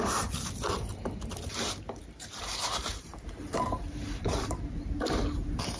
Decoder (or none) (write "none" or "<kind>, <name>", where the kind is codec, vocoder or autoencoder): vocoder, BigVGAN v2